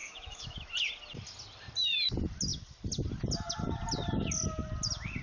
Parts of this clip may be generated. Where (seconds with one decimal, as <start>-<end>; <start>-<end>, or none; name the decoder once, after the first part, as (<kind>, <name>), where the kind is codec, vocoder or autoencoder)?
0.0-0.7 (autoencoder, DAC-VAE)